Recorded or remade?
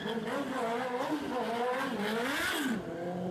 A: recorded